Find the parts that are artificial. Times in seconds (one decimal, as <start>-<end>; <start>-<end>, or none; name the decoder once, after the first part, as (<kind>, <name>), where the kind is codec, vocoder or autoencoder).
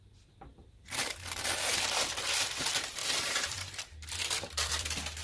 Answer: 0.5-1.7 (vocoder, BigVGAN v2); 3.0-5.2